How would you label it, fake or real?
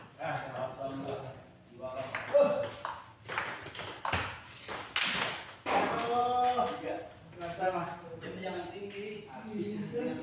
real